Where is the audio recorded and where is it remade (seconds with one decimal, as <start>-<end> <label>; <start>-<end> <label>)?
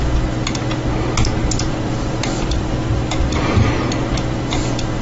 0.0-1.4 recorded; 1.4-3.8 remade; 3.8-5.0 recorded